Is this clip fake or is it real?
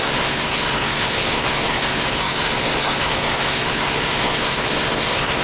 fake